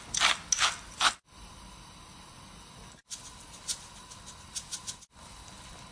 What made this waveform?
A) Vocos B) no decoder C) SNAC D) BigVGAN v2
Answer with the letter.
B